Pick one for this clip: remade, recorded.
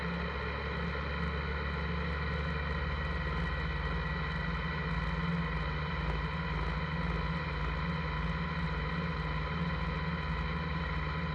recorded